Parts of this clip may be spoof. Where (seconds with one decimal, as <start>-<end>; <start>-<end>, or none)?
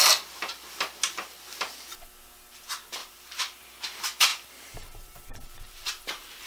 3.0-3.6; 4.3-6.5